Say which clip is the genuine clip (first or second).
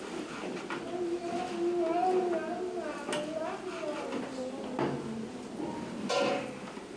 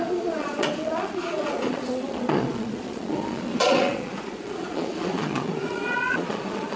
first